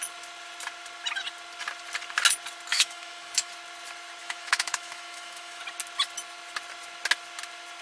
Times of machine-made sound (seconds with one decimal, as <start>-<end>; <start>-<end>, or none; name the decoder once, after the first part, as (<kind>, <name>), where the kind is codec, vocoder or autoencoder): 2.7-3.5 (autoencoder, DAC-VAE); 4.2-5.6